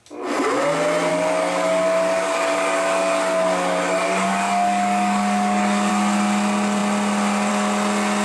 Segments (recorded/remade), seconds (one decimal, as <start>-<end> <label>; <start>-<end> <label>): 0.0-1.1 recorded; 1.1-5.9 remade; 5.9-8.2 recorded